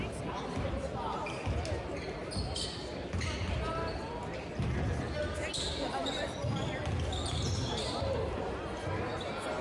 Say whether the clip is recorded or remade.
recorded